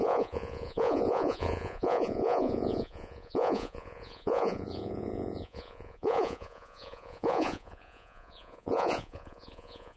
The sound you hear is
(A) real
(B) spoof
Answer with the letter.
B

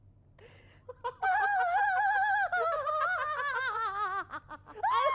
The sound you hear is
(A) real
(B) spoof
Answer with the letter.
A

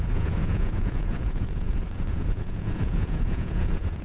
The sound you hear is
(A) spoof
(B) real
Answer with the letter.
A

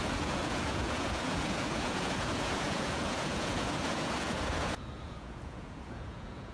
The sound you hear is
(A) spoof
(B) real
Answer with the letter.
A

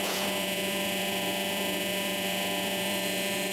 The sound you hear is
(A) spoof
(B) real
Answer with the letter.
A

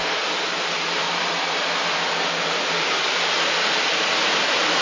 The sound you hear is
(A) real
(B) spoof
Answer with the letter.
A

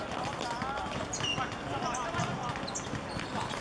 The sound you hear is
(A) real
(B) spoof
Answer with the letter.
A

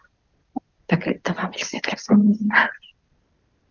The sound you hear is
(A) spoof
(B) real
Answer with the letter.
B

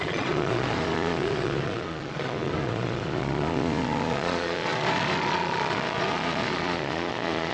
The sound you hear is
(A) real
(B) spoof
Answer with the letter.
B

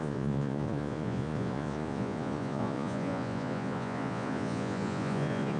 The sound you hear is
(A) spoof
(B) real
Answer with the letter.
A